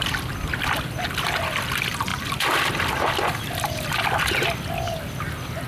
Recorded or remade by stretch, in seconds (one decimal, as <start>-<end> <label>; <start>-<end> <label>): 0.0-5.7 recorded